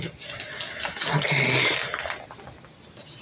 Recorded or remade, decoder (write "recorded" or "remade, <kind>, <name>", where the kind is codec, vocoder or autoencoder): recorded